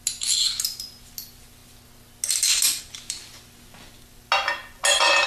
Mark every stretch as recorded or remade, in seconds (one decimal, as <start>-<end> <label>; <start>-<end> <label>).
0.0-5.3 recorded